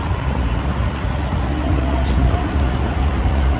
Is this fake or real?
fake